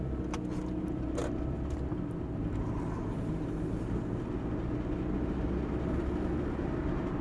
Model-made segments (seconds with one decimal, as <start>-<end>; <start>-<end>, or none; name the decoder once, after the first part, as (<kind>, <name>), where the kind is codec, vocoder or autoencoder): 1.2-1.9 (vocoder, BigVGAN v2)